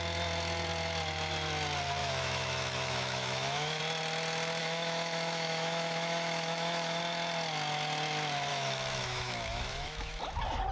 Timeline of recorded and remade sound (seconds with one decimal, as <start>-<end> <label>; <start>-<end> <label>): 0.0-2.0 recorded; 2.0-3.8 remade; 3.8-4.6 recorded; 4.6-7.0 remade; 7.0-8.5 recorded; 8.5-10.2 remade; 10.2-10.7 recorded